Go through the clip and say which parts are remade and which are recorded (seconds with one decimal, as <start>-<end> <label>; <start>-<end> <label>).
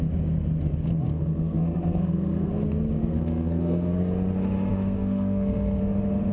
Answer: 0.0-1.1 recorded; 1.1-2.5 remade; 2.5-3.0 recorded; 3.0-4.0 remade; 4.0-4.7 recorded; 4.7-5.8 remade; 5.8-6.3 recorded